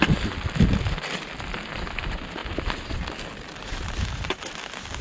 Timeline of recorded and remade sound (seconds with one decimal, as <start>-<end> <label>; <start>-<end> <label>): 0.0-2.4 recorded; 2.4-3.1 remade; 3.1-3.7 recorded; 3.7-5.0 remade